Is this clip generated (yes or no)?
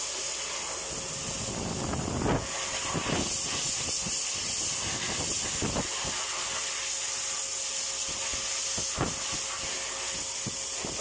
no